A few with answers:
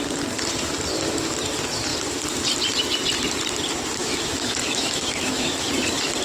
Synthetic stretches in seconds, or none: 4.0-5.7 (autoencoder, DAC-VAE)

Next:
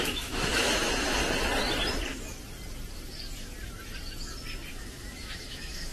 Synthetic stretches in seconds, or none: 0.0-1.2 (autoencoder, DAC-VAE); 4.7-5.9

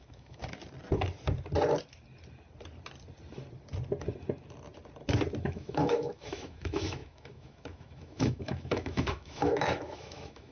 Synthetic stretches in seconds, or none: 0.0-0.4 (autoencoder, DAC-VAE); 5.4-10.5

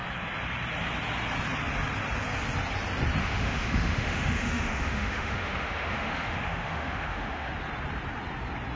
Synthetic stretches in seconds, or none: 3.2-7.5 (autoencoder, DAC-VAE)